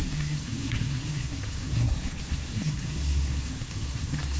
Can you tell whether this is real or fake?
fake